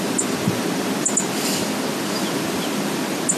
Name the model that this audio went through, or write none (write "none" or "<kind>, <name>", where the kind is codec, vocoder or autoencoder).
none